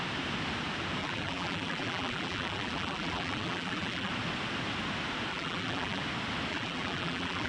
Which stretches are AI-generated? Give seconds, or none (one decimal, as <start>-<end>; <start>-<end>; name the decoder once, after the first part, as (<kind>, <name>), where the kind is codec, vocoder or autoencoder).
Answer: 1.0-4.1 (vocoder, BigVGAN v2); 5.3-6.0; 6.5-7.5